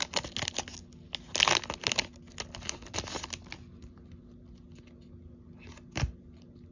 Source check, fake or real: real